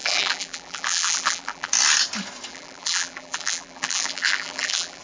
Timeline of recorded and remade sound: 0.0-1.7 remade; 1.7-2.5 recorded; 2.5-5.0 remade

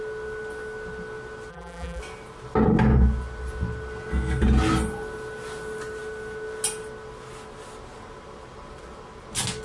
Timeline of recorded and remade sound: 0.0-1.5 recorded; 1.5-2.0 remade; 2.0-9.6 recorded

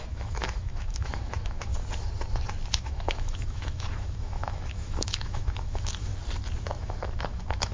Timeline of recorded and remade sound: 0.0-1.7 remade; 1.7-2.8 recorded; 2.8-6.1 remade; 6.1-6.8 recorded; 6.8-7.7 remade